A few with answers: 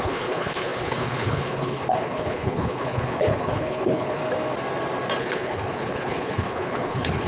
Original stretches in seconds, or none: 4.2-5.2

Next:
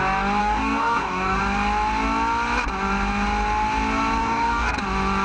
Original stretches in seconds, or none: 0.0-0.4; 1.4-4.2; 4.8-5.2

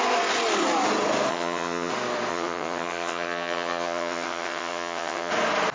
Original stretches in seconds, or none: 0.0-1.3; 1.9-2.3; 5.3-5.7

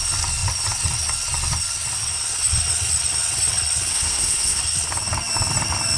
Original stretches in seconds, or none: 0.0-3.9; 4.6-6.0

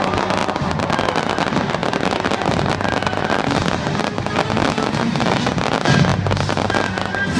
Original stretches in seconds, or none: 0.0-7.4

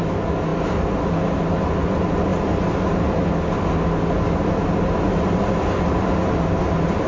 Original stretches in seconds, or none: 0.0-7.1

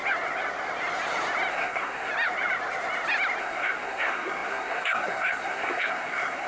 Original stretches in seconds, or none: 0.0-1.5; 2.1-3.4

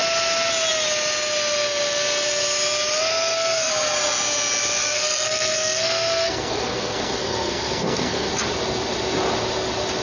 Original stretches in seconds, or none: 0.0-3.1; 3.7-4.8; 8.3-10.0